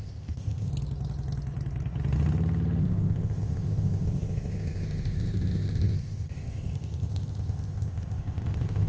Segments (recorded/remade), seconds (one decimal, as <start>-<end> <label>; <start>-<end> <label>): 0.0-0.7 remade; 0.7-2.8 recorded; 2.8-8.9 remade